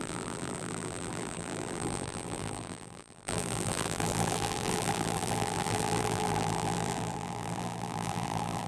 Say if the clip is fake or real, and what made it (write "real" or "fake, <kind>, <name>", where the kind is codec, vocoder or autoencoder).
fake, vocoder, BigVGAN v2